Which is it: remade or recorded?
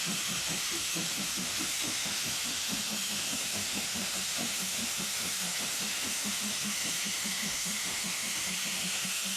remade